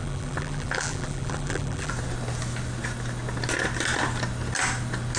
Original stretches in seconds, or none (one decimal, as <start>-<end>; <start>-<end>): 1.9-5.2